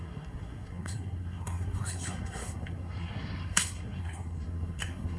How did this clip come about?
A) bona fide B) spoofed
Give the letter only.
B